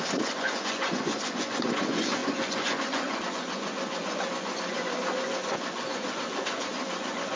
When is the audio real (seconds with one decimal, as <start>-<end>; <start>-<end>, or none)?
none